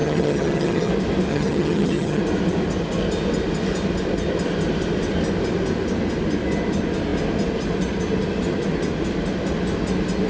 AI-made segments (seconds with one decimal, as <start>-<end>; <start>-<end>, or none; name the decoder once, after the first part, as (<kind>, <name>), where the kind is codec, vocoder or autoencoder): 0.0-0.9 (vocoder, HiFi-GAN); 1.3-2.2